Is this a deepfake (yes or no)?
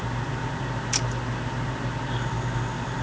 no